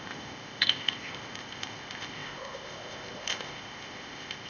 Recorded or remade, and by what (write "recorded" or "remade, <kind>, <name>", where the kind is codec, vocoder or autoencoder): remade, codec, ZipCodec